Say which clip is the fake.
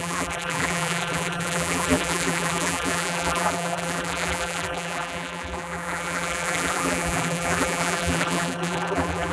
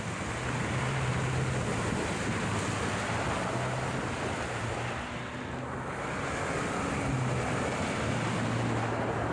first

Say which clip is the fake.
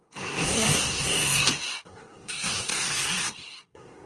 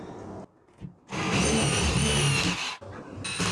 first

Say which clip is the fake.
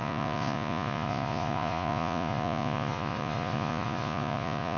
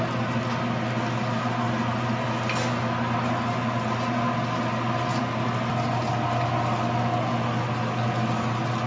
first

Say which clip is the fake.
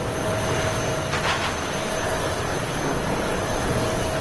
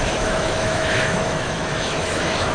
second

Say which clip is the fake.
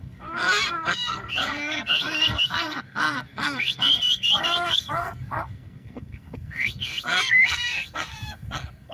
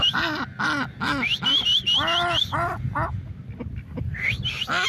first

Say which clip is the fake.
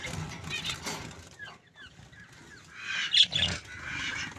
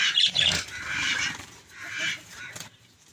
second